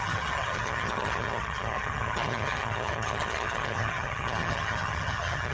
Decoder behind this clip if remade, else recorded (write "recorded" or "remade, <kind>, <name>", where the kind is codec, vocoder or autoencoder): remade, vocoder, HiFi-GAN